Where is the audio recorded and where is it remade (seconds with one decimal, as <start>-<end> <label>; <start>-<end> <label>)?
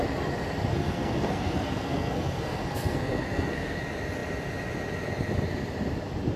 0.0-0.7 recorded; 0.7-3.8 remade; 3.8-6.4 recorded